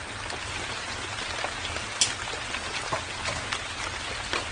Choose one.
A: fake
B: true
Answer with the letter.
B